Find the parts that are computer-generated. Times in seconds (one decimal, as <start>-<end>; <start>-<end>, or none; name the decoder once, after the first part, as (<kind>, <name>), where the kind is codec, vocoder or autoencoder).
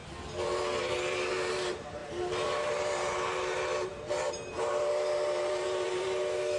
0.8-6.6 (vocoder, BigVGAN v2)